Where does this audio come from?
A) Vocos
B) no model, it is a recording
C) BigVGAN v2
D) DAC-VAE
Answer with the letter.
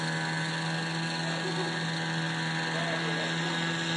B